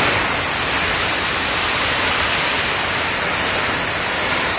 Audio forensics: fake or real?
real